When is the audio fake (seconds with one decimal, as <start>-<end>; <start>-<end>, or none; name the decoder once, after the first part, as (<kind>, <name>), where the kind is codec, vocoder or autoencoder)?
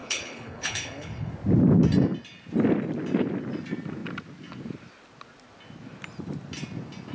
0.0-1.3 (codec, HILCodec)